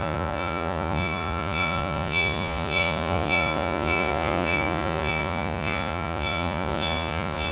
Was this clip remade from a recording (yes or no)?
yes